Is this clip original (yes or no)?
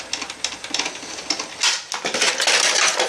yes